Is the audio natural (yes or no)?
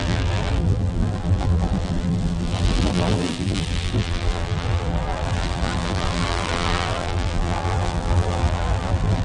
no